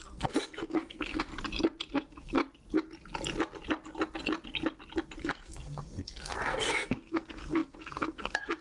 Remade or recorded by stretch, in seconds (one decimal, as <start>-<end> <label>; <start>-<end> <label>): 0.0-1.3 remade; 1.3-1.9 recorded; 1.9-2.4 remade; 2.4-5.2 recorded; 5.2-8.6 remade